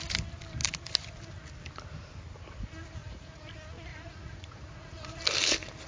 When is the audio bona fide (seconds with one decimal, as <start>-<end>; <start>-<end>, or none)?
0.0-3.0; 3.5-3.9; 5.2-5.9